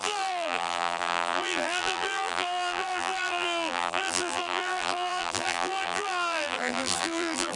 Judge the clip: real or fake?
fake